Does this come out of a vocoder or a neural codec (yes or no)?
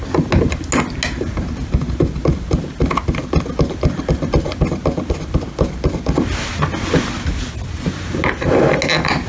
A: no